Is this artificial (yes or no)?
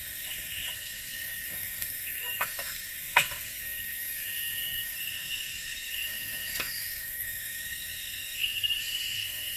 yes